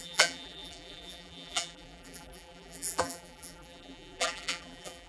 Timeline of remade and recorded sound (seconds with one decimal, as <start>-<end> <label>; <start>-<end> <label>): 0.0-5.1 remade